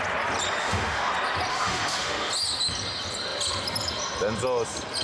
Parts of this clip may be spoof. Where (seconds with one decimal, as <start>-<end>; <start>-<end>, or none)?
0.6-1.1; 1.5-2.3